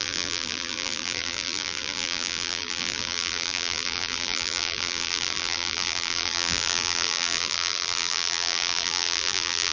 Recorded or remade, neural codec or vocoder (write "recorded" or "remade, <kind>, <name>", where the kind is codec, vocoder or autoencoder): remade, vocoder, BigVGAN v2